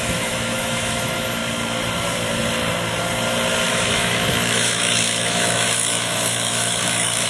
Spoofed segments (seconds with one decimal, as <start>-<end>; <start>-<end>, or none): 0.0-1.4; 3.7-7.3

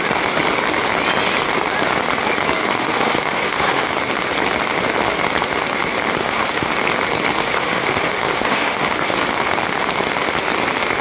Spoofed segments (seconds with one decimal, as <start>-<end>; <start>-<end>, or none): 2.6-3.9; 6.2-6.7; 7.4-9.2

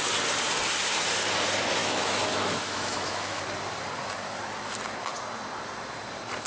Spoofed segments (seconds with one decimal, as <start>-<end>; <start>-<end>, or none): 1.8-3.4

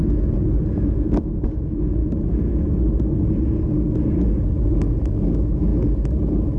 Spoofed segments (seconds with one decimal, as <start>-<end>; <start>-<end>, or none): 0.8-2.0; 5.3-5.7

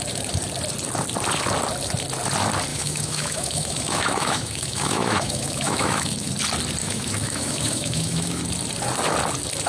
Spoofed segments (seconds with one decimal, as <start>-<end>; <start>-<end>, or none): 2.7-6.3; 6.8-8.4